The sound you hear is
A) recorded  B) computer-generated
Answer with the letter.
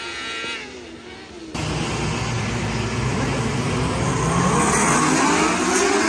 A